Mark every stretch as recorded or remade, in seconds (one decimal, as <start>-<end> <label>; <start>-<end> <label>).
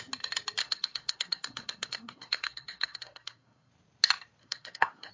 0.0-0.6 recorded; 0.6-3.7 remade; 3.7-4.4 recorded; 4.4-5.1 remade